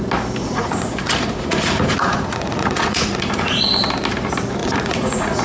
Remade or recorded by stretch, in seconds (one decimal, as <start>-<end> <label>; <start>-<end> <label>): 0.0-0.4 recorded; 0.4-3.6 remade; 3.6-4.6 recorded; 4.6-5.4 remade